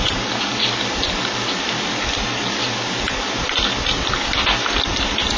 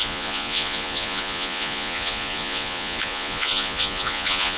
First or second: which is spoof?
second